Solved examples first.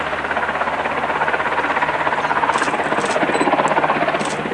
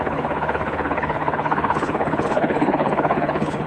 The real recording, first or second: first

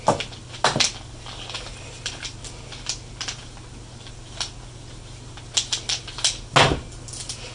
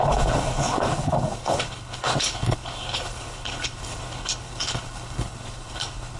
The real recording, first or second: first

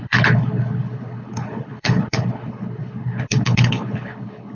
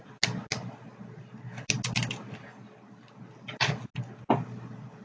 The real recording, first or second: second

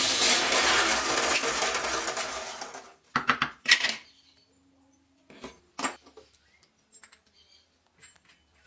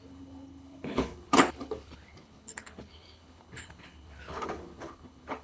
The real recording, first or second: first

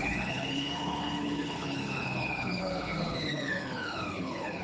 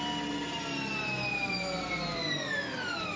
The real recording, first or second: second